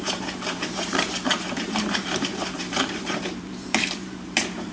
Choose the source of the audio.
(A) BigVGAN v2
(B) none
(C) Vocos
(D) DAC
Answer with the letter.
A